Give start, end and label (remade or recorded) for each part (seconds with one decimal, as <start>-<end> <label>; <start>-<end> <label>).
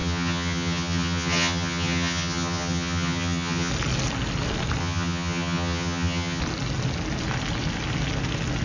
0.0-3.7 remade; 3.7-4.8 recorded; 4.8-6.4 remade; 6.4-8.6 recorded